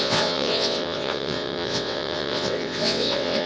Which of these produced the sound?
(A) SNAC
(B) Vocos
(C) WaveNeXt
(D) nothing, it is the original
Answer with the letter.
C